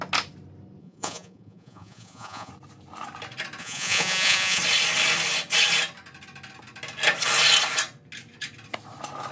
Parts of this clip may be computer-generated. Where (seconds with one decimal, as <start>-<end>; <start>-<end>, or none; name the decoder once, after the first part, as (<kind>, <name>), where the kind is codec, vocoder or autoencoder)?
0.8-2.5 (vocoder, Vocos); 3.6-4.6